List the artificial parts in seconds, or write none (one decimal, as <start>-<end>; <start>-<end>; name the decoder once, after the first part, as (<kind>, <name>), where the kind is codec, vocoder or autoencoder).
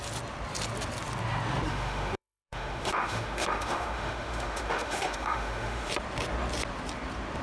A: 1.7-5.9 (autoencoder, DAC-VAE)